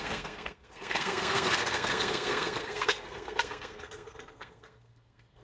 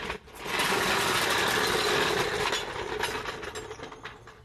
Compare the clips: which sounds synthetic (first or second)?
first